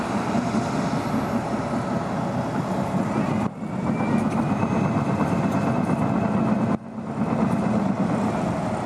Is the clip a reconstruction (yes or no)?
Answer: no